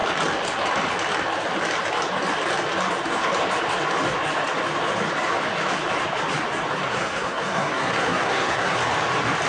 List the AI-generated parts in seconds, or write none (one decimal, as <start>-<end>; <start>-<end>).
6.9-8.8